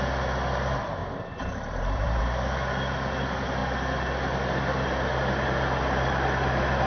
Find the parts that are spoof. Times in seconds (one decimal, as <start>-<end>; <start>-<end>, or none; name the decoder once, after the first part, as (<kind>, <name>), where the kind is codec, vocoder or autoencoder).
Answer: 1.0-2.2 (vocoder, BigVGAN v2)